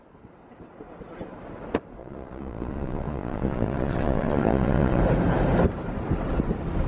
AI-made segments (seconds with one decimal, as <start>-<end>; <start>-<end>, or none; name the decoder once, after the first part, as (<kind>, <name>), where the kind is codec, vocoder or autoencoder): 2.0-5.0 (vocoder, Vocos)